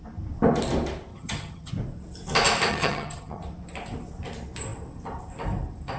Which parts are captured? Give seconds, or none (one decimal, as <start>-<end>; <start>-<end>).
0.0-1.1; 1.7-2.7; 3.4-6.0